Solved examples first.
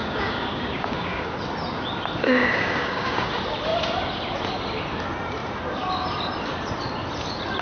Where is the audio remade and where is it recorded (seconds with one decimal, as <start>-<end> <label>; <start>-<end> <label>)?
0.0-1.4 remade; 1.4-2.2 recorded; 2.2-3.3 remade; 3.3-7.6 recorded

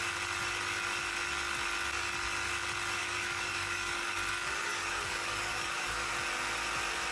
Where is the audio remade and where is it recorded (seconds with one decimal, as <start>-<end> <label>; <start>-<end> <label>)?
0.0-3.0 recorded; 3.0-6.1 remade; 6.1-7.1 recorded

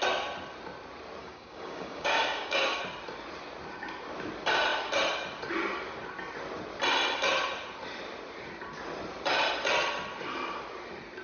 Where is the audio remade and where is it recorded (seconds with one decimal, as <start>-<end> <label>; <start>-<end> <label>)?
0.0-1.2 recorded; 1.2-2.8 remade; 2.8-11.2 recorded

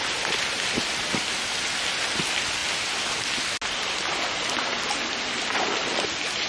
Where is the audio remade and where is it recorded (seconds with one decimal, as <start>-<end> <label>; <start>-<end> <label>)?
0.0-6.5 recorded

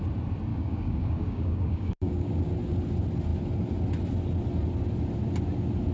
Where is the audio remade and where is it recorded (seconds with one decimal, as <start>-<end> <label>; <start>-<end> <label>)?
0.0-0.5 recorded; 0.5-2.5 remade; 2.5-5.9 recorded

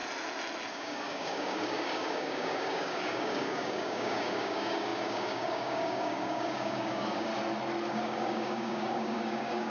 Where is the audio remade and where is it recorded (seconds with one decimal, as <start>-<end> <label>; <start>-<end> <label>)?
0.0-0.7 recorded; 0.7-7.3 remade; 7.3-7.9 recorded; 7.9-9.7 remade